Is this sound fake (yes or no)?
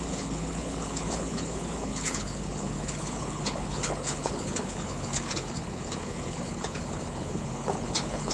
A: yes